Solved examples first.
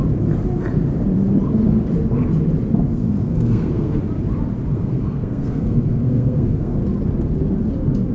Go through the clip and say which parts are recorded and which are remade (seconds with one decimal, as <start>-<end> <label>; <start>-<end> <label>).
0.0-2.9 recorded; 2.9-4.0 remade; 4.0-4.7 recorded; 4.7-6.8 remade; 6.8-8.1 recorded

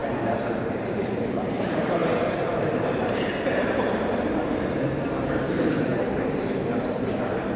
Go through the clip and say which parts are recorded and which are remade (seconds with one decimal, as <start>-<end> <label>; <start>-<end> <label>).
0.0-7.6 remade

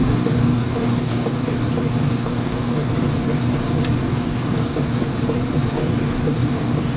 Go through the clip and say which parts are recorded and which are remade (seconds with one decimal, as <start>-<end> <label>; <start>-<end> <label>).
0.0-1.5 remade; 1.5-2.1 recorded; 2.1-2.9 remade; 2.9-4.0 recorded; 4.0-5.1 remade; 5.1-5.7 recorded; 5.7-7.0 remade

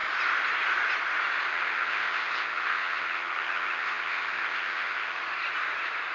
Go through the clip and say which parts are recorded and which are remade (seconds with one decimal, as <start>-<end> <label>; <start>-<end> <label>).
0.0-1.5 recorded; 1.5-5.2 remade; 5.2-6.1 recorded

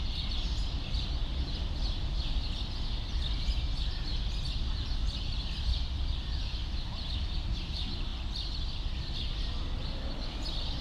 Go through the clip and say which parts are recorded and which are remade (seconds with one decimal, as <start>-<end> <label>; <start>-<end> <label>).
0.0-10.8 recorded

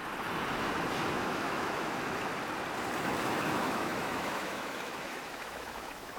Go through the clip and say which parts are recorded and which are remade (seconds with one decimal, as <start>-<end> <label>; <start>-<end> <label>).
0.0-1.1 recorded; 1.1-2.3 remade; 2.3-3.0 recorded; 3.0-6.2 remade

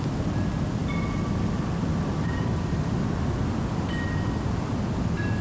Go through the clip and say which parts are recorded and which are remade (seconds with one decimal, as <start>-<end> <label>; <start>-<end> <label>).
0.0-5.4 recorded

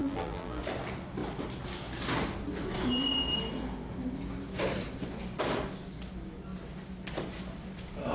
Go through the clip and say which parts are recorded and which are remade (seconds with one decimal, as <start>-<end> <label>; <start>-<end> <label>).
0.0-0.6 remade; 0.6-8.1 recorded